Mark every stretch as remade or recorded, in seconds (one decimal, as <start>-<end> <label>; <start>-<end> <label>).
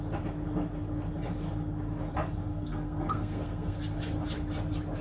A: 0.0-2.5 recorded; 2.5-3.8 remade; 3.8-5.0 recorded